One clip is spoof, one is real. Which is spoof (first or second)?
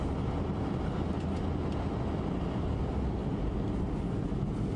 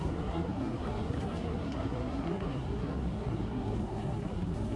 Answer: second